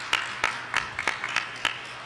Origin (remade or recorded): recorded